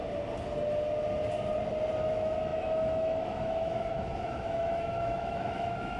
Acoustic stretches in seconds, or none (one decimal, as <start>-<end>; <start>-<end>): 0.0-2.0

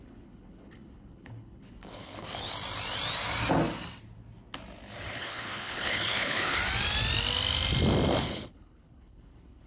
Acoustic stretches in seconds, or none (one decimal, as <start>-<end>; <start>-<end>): 2.5-5.1; 6.6-8.2

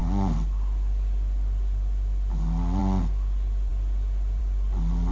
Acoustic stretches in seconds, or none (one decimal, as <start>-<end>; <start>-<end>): 0.0-5.1

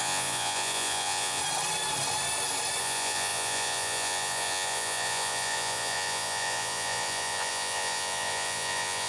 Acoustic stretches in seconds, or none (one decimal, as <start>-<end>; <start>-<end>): 1.4-2.8

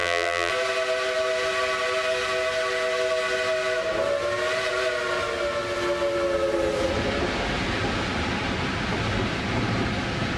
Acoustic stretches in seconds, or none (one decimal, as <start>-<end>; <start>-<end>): 0.5-10.4

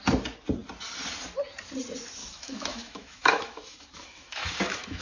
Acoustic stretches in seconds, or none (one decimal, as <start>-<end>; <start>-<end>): 0.0-2.2

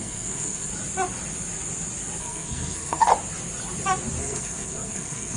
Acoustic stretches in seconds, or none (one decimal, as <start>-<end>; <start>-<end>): 0.7-2.2; 3.1-4.2